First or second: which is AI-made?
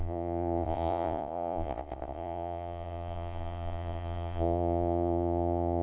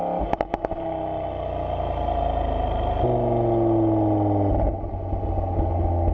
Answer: first